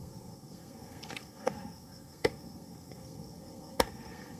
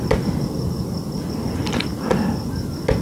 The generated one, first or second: first